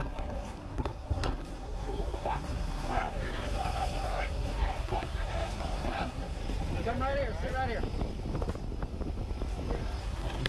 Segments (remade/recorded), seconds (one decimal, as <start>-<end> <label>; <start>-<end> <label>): 0.0-6.4 remade; 6.4-10.0 recorded; 10.0-10.5 remade